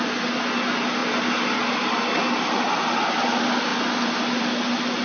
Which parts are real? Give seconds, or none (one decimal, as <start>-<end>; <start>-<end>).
0.0-5.0